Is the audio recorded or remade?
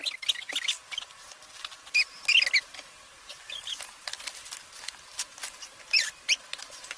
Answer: recorded